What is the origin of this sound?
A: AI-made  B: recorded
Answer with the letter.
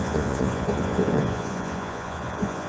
A